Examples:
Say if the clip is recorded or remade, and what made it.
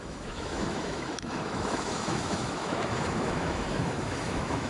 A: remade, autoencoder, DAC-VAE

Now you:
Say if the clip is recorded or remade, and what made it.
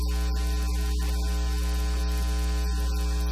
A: recorded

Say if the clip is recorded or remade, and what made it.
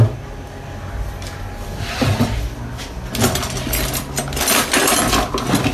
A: recorded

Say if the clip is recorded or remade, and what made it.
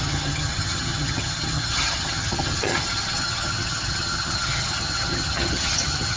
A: remade, vocoder, HiFi-GAN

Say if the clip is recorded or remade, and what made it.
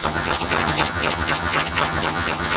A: remade, vocoder, HiFi-GAN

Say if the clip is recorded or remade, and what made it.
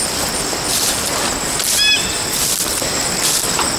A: recorded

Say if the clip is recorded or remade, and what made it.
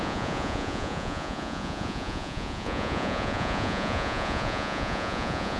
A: remade, vocoder, Vocos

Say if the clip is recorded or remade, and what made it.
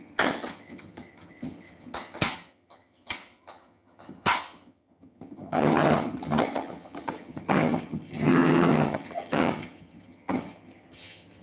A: remade, vocoder, HiFi-GAN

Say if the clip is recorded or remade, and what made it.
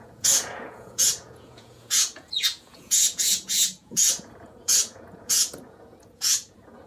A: remade, vocoder, Vocos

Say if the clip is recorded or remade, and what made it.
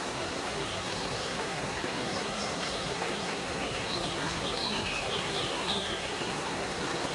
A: remade, codec, SNAC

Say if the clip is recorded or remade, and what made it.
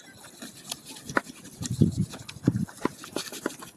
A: recorded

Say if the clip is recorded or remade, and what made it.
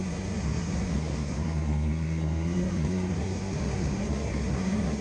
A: remade, codec, SNAC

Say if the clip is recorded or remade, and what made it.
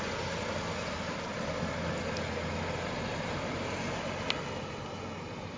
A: recorded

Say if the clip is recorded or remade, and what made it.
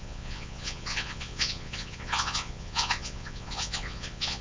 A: remade, vocoder, Vocos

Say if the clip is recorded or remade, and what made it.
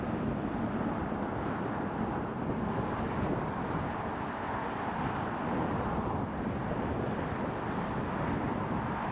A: recorded